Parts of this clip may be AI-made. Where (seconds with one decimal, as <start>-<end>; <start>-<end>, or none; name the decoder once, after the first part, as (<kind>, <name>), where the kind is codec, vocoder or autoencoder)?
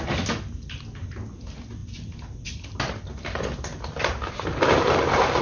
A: none